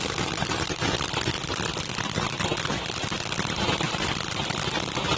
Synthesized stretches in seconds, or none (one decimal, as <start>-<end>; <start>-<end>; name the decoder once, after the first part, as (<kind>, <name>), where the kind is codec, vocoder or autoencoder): none